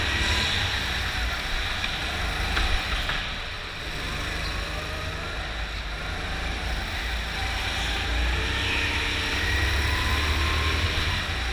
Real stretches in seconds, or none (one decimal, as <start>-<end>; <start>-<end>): 0.0-11.5